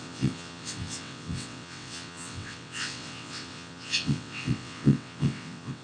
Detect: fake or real fake